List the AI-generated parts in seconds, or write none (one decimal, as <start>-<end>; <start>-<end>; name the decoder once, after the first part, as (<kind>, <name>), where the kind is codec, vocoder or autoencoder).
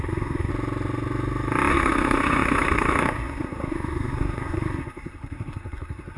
0.0-0.5 (codec, SNAC); 1.7-6.2